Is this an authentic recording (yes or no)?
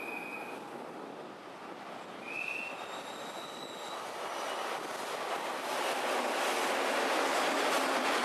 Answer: yes